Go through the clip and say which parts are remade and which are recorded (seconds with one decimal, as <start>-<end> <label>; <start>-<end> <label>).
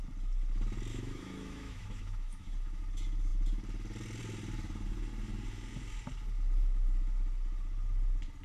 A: 0.0-0.9 recorded; 0.9-2.8 remade; 2.8-8.4 recorded